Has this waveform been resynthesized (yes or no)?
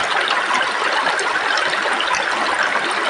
no